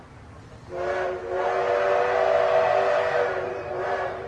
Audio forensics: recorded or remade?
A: recorded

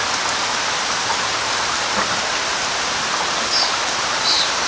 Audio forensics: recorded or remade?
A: recorded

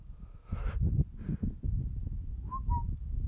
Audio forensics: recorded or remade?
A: recorded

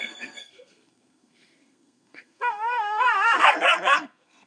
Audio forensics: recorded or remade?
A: remade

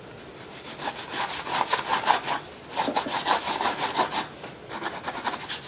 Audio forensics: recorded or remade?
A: recorded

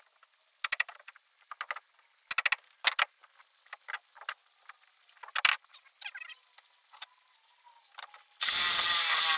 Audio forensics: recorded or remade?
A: recorded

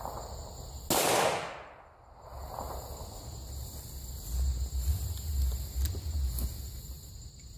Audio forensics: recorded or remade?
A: recorded